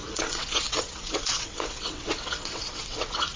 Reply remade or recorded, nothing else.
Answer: remade